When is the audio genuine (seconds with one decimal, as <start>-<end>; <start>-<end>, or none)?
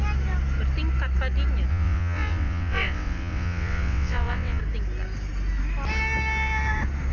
0.0-1.7; 4.6-7.1